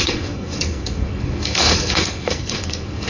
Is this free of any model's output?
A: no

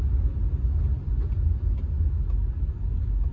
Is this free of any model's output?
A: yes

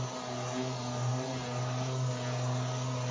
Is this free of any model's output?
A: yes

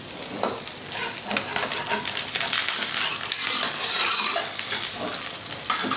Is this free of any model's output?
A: yes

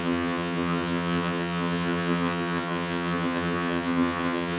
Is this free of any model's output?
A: no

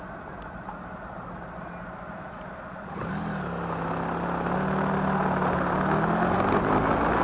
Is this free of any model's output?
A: yes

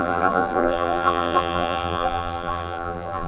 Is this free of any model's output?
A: no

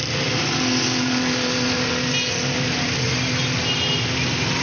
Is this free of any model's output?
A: yes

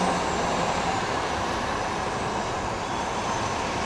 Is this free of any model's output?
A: no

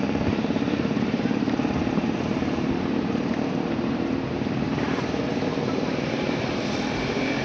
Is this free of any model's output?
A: no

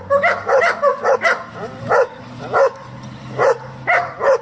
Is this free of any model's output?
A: no